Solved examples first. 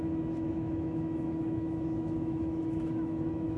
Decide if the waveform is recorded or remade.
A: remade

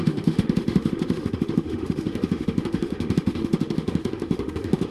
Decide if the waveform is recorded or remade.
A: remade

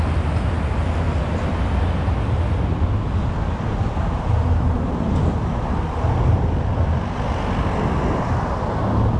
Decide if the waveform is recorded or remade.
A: recorded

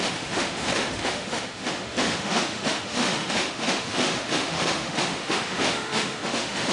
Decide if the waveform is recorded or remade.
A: remade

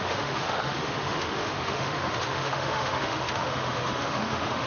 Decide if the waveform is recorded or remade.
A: remade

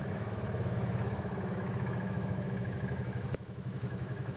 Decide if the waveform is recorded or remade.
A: remade